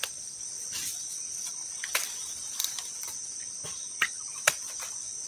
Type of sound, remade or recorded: recorded